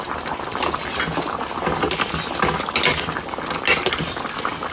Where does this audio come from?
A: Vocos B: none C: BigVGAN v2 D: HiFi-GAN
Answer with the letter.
B